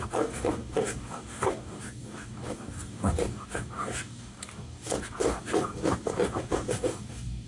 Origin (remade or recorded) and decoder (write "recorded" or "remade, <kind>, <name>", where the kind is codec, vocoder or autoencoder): remade, codec, DAC